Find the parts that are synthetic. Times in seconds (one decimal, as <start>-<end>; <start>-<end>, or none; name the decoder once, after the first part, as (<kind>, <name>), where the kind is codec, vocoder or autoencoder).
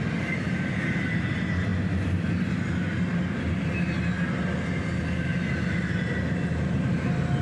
none